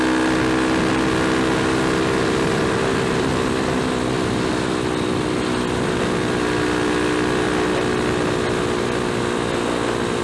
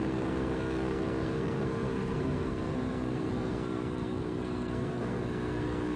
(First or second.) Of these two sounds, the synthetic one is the second